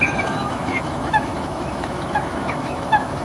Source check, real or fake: fake